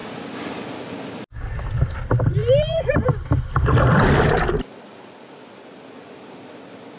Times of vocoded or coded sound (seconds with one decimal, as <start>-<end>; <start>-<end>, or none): 0.0-0.6; 2.4-3.3